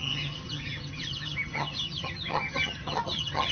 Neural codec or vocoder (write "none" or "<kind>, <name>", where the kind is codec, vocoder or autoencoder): vocoder, HiFi-GAN